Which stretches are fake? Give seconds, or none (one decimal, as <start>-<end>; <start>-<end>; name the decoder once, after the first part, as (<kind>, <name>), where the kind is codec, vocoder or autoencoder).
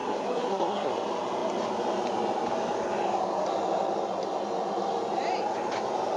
0.0-0.9 (codec, SNAC)